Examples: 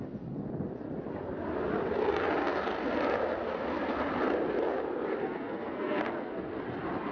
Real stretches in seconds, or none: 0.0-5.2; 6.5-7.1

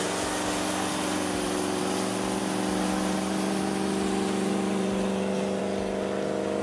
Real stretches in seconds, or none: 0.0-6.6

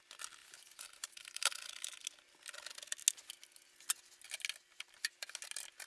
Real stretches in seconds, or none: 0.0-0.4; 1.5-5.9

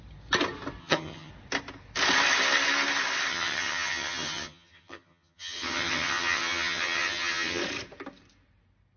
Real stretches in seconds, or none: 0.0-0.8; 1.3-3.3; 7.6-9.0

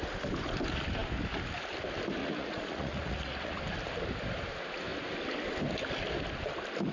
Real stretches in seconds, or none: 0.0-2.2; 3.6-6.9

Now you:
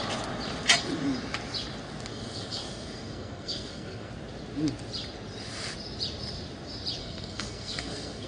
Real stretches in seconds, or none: 0.0-2.1; 4.1-7.0